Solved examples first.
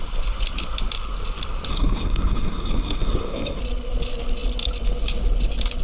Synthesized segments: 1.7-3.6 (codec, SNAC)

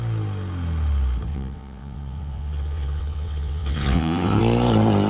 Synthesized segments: 1.3-4.4 (vocoder, WaveNeXt)

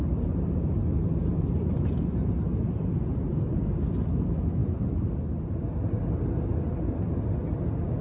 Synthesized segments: 4.6-5.3 (vocoder, BigVGAN v2)

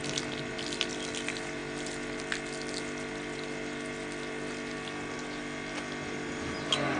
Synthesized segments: none

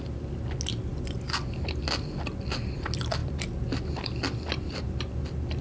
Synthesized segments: none